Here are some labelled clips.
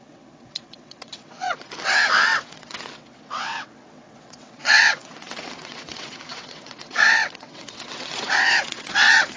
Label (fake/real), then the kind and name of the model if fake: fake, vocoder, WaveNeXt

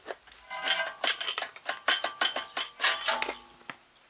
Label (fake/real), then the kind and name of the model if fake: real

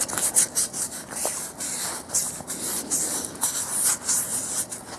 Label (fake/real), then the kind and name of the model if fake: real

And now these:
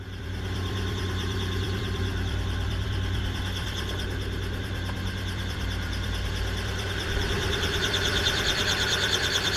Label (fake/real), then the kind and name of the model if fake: fake, vocoder, BigVGAN v2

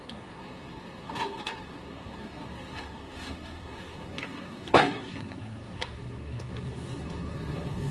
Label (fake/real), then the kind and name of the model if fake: fake, codec, SNAC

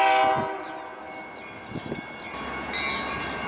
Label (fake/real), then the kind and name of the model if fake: real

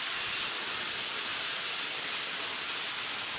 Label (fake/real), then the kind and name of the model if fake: real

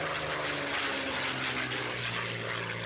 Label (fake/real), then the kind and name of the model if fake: real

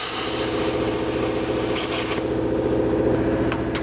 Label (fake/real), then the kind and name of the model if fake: real